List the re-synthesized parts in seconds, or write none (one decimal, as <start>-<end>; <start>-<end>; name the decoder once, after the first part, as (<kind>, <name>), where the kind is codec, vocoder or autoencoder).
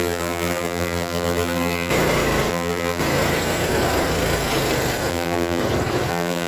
0.0-1.9 (vocoder, BigVGAN v2); 2.5-3.0; 5.1-5.6; 6.1-6.5